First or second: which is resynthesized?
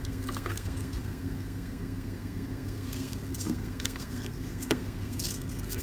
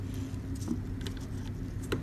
first